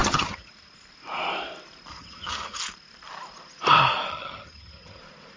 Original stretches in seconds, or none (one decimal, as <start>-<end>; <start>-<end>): 0.5-1.9; 2.6-4.1; 5.0-5.4